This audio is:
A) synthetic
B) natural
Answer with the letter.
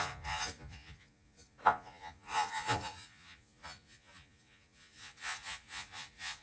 A